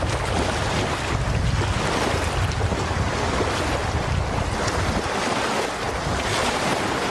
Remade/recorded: recorded